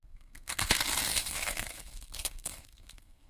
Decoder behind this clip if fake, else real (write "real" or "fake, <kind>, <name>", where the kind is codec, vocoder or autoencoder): fake, codec, SNAC